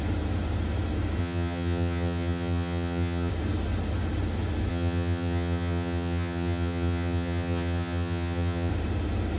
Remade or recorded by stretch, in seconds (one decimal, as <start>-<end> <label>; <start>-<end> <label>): 0.0-1.2 recorded; 1.2-3.3 remade; 3.3-4.7 recorded; 4.7-8.7 remade; 8.7-9.4 recorded